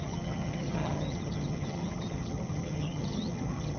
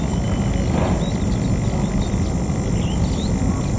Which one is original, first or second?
second